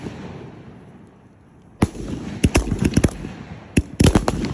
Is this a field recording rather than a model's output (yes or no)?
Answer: yes